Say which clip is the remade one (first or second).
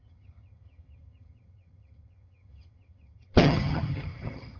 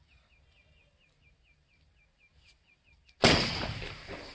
first